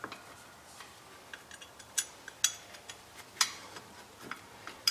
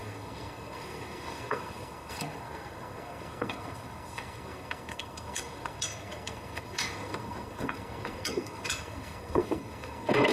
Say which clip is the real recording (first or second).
first